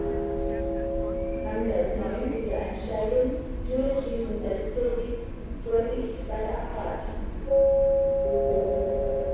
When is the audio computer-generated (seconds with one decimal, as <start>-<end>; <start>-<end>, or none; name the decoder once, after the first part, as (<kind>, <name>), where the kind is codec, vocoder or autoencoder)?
4.9-6.3 (vocoder, Vocos); 6.7-7.5; 8.5-9.3